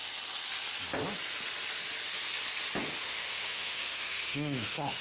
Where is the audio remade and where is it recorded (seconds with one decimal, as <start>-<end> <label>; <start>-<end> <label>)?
0.0-3.0 recorded; 3.0-5.0 remade